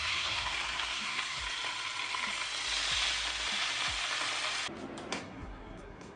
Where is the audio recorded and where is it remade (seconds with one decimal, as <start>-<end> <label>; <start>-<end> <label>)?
0.0-1.4 remade; 1.4-5.1 recorded; 5.1-6.2 remade